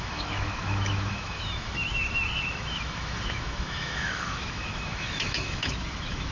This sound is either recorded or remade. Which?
remade